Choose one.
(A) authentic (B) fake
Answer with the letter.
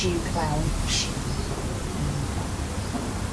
A